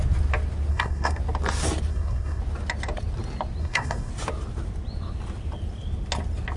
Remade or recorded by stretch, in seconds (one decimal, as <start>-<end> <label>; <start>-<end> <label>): 0.0-0.7 recorded; 0.7-1.2 remade; 1.2-1.9 recorded; 1.9-2.4 remade; 2.4-3.6 recorded; 3.6-4.1 remade; 4.1-6.6 recorded